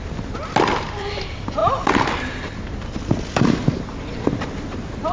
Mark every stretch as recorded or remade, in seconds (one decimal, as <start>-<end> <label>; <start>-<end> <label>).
0.0-5.1 recorded